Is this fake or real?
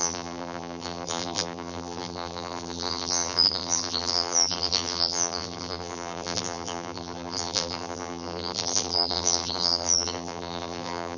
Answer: fake